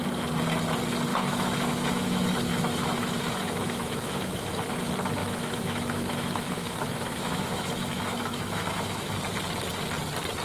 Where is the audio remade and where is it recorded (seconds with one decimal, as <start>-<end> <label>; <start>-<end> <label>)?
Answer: 0.0-1.1 recorded; 1.1-4.8 remade; 4.8-5.2 recorded; 5.2-9.1 remade; 9.1-10.4 recorded